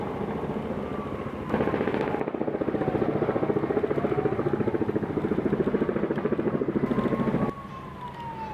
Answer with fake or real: real